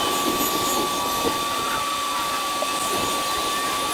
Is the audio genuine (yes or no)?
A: yes